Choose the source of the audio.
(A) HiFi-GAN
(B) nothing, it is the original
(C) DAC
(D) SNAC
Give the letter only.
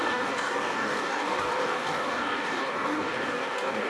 C